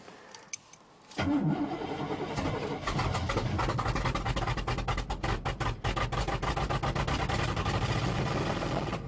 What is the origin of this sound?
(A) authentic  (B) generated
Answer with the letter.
A